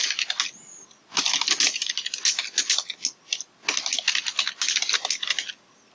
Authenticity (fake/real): real